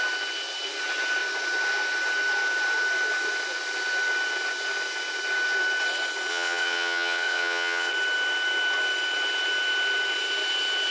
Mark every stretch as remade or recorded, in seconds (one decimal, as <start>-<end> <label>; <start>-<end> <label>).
0.0-6.3 recorded; 6.3-7.9 remade; 7.9-10.9 recorded